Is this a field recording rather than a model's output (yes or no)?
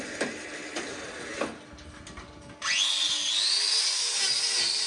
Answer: yes